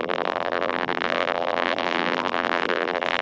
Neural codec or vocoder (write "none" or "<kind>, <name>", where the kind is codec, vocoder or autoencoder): vocoder, BigVGAN v2